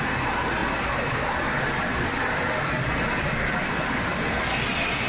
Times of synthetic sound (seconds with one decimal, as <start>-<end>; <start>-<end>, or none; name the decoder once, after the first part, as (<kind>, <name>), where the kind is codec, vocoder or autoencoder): none